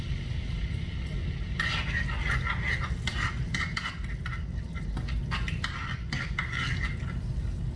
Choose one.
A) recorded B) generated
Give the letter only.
A